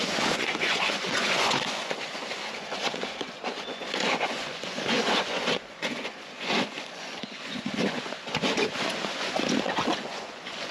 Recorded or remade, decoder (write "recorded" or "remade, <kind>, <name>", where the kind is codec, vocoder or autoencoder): remade, vocoder, Vocos